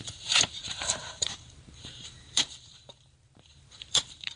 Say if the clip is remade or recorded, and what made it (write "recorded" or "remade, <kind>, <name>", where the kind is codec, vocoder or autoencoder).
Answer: remade, vocoder, BigVGAN v2